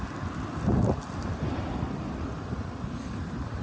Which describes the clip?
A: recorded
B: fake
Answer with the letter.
A